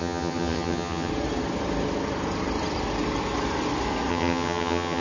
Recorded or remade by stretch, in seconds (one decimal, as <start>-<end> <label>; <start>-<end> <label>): 0.0-1.1 remade; 1.1-4.1 recorded; 4.1-5.0 remade